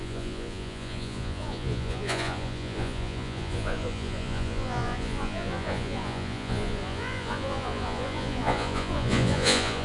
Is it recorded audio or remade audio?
remade